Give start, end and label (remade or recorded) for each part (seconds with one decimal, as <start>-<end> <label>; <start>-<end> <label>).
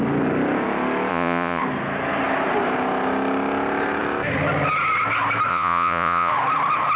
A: 0.0-1.1 recorded; 1.1-1.6 remade; 1.6-5.5 recorded; 5.5-6.3 remade; 6.3-7.0 recorded